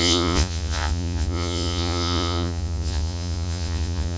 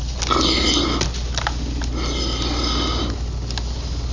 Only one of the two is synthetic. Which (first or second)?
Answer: first